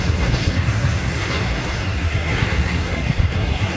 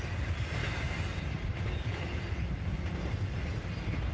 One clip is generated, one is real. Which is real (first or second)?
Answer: second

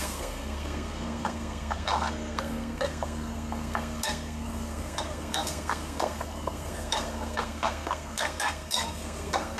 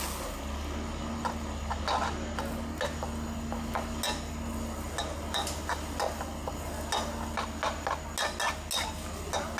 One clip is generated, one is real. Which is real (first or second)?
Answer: second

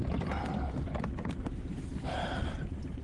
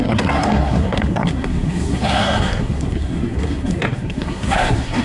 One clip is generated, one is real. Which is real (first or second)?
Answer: first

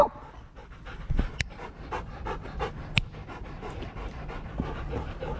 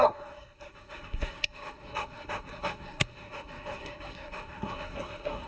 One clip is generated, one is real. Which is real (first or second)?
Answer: first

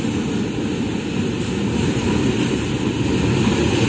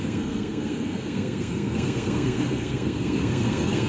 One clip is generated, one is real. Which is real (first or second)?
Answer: first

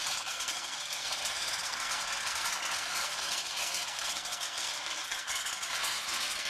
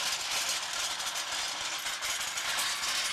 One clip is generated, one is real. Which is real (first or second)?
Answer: second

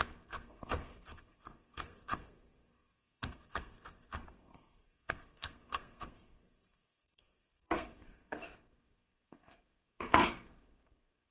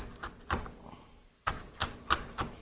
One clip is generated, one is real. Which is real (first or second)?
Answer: second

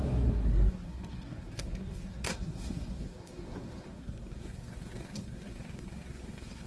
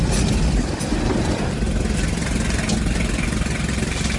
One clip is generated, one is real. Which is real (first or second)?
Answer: second